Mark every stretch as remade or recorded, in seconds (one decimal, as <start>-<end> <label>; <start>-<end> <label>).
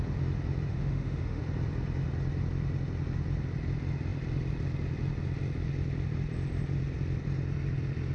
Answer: 0.0-0.7 recorded; 0.7-1.4 remade; 1.4-8.1 recorded